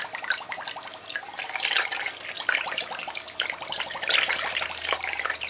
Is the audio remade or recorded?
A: recorded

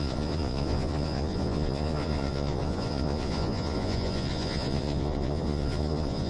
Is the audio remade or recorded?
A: remade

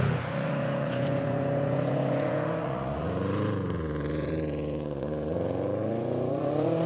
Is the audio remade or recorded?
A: remade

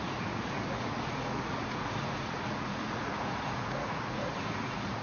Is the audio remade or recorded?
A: remade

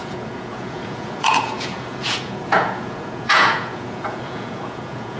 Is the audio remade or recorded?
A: remade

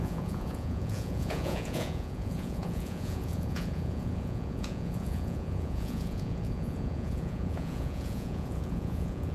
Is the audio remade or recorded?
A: remade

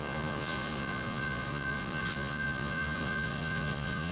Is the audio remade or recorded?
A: remade